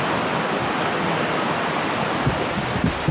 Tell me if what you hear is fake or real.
real